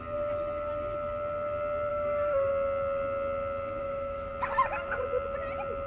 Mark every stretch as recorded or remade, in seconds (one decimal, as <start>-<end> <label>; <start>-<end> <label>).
0.0-1.9 recorded; 1.9-2.5 remade; 2.5-3.8 recorded; 3.8-4.3 remade; 4.3-5.9 recorded